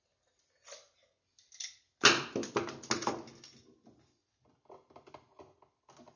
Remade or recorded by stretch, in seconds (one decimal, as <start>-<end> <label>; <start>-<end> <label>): 0.0-6.2 recorded